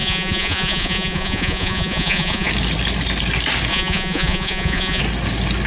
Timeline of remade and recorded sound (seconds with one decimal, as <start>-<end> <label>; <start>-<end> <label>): 0.0-2.5 remade; 2.5-3.7 recorded; 3.7-5.0 remade; 5.0-5.7 recorded